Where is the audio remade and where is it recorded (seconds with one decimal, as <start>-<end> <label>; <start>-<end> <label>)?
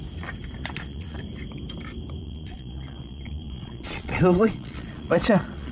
0.0-0.6 recorded; 0.6-1.2 remade; 1.2-2.2 recorded; 2.2-5.7 remade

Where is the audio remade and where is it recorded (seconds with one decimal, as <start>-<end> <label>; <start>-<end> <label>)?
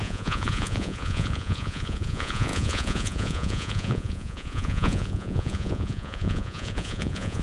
0.0-7.4 remade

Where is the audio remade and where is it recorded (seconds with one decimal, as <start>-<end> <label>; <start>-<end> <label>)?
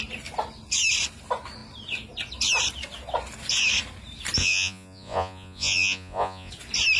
0.0-4.4 recorded; 4.4-6.5 remade; 6.5-7.0 recorded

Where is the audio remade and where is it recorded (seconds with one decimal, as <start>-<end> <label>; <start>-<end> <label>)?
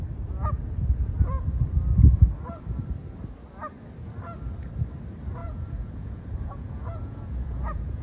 0.0-5.4 recorded; 5.4-8.0 remade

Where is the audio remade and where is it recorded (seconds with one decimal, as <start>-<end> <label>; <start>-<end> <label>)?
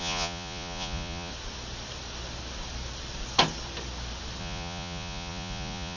0.0-1.3 remade; 1.3-4.4 recorded; 4.4-6.0 remade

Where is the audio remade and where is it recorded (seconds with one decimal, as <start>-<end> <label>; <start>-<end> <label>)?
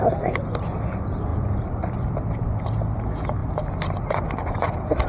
0.0-5.1 recorded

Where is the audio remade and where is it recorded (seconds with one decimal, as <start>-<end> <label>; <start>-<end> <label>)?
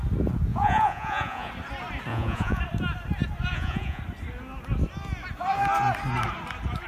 0.0-0.5 recorded; 0.5-1.5 remade; 1.5-2.1 recorded; 2.1-2.6 remade; 2.6-3.5 recorded; 3.5-4.0 remade; 4.0-6.9 recorded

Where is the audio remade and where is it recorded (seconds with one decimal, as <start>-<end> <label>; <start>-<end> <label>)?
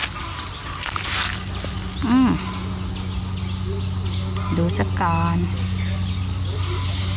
0.0-7.2 recorded